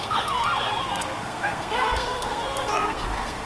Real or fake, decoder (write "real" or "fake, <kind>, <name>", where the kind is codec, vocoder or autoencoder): fake, codec, SNAC